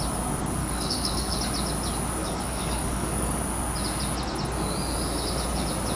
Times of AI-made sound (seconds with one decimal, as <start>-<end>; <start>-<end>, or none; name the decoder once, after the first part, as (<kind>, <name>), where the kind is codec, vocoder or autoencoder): 0.6-1.4 (codec, DAC); 2.2-3.4